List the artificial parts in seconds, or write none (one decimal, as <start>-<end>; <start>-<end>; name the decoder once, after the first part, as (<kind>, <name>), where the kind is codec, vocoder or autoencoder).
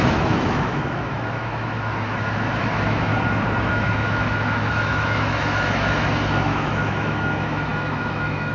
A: 0.0-3.1 (autoencoder, DAC-VAE); 3.6-8.5